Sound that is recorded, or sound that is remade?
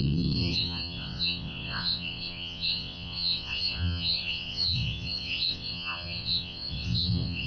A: remade